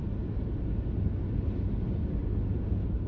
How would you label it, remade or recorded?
recorded